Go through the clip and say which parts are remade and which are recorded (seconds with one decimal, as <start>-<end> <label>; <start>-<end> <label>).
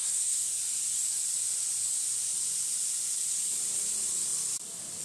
0.0-0.6 remade; 0.6-5.0 recorded